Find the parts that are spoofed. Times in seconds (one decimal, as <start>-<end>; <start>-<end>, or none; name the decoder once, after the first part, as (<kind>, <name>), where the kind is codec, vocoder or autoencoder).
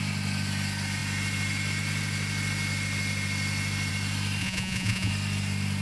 4.4-5.1 (vocoder, Vocos)